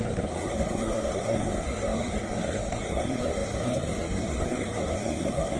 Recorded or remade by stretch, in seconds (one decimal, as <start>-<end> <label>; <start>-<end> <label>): 0.0-5.6 remade